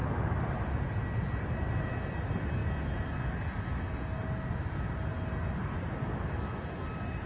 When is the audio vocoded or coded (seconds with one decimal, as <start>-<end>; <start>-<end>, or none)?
none